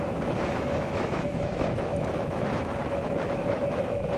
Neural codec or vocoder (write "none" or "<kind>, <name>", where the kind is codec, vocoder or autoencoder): autoencoder, DAC-VAE